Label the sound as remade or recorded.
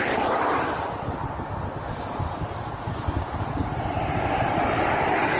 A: recorded